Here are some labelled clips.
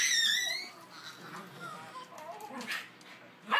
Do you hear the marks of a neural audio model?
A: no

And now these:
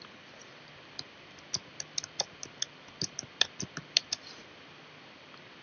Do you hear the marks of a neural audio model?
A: yes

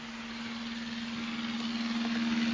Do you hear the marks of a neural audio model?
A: no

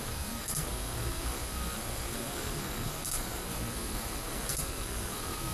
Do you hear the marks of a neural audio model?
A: yes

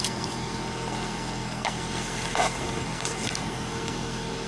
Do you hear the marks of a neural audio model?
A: yes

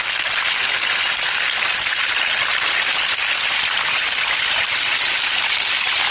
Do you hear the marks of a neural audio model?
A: no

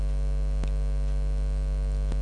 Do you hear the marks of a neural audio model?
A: no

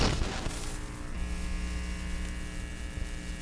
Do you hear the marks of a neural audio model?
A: no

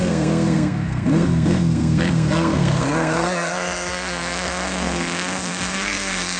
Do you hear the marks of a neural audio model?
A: yes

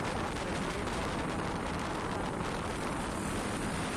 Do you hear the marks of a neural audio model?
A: no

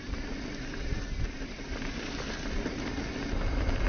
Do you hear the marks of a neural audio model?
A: no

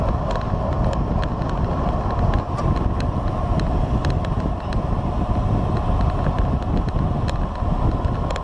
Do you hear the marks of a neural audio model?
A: no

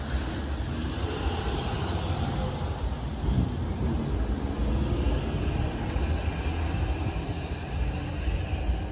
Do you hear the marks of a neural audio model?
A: no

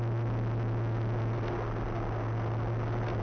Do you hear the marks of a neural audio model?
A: no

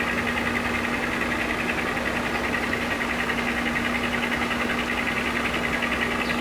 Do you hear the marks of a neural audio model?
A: no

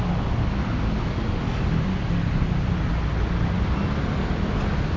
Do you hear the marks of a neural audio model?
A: no